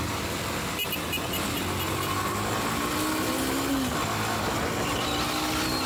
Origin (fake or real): real